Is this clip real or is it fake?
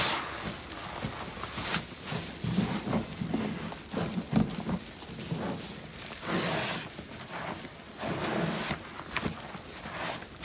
real